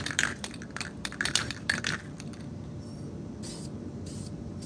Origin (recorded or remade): remade